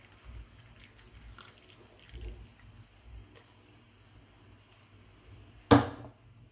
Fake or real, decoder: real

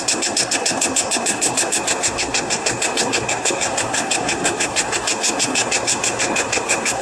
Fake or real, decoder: fake, codec, SNAC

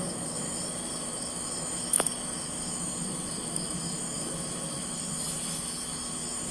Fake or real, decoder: fake, autoencoder, DAC-VAE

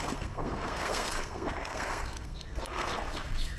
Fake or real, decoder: fake, codec, SNAC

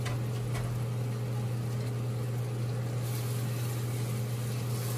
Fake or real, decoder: real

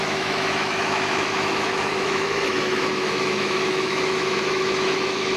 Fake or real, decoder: fake, autoencoder, DAC-VAE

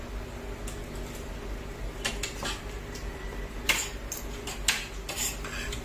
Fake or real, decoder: real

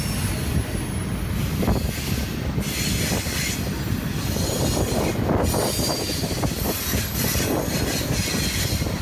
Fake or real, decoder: real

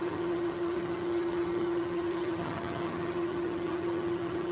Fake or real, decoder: fake, vocoder, HiFi-GAN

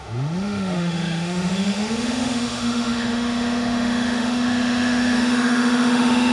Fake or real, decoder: fake, autoencoder, DAC-VAE